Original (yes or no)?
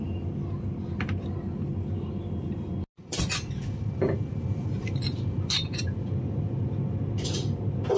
yes